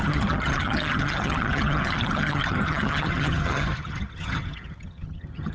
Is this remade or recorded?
remade